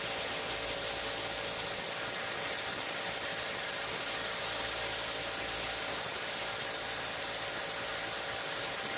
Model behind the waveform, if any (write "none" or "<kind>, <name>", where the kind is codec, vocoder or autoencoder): none